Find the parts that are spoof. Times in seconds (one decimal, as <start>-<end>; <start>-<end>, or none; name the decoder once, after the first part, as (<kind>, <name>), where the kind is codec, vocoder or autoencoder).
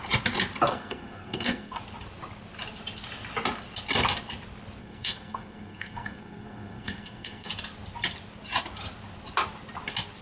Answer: 0.7-1.8 (codec, SNAC); 4.8-7.5